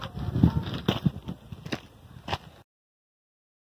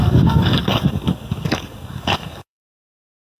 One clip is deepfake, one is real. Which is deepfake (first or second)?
second